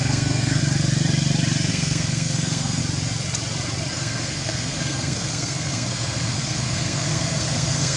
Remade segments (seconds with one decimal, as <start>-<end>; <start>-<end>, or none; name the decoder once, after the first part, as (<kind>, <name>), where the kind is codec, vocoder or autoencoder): 0.0-0.6 (codec, SNAC); 1.7-2.8; 3.9-8.0